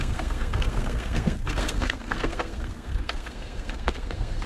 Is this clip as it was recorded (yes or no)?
no